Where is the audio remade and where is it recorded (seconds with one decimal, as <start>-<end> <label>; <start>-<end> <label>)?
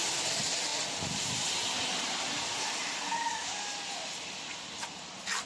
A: 0.0-5.5 recorded